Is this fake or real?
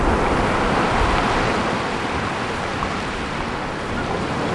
real